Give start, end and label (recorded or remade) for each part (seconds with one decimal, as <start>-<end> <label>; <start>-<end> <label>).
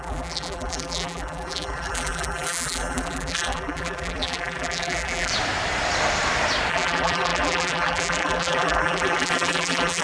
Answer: 0.0-5.3 remade; 5.3-6.7 recorded; 6.7-10.0 remade